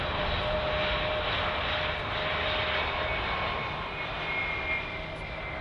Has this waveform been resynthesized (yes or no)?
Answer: no